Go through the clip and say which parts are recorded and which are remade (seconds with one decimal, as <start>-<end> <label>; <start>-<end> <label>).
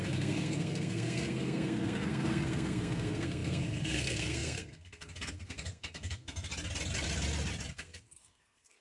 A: 0.0-6.5 remade; 6.5-7.7 recorded; 7.7-8.8 remade